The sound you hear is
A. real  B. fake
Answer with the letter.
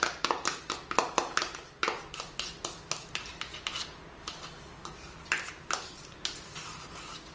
A